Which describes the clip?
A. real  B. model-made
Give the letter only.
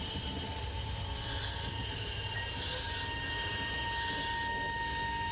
A